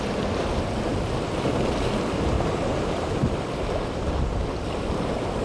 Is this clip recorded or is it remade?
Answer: recorded